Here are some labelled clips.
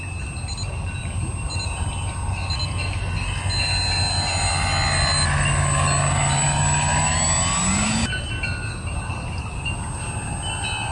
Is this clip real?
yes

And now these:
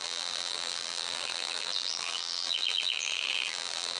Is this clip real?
no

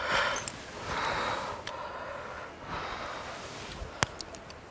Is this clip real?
yes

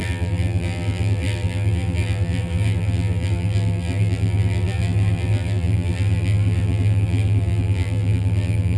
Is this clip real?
no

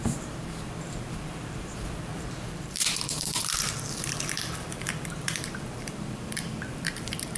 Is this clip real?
no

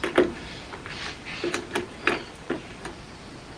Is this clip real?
no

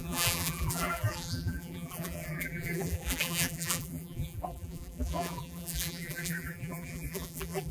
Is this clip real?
no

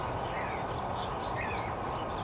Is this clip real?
yes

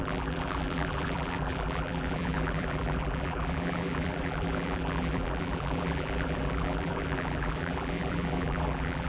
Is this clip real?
no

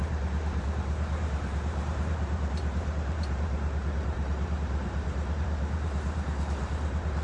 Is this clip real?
no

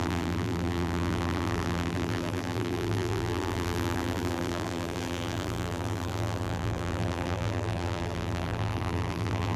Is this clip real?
no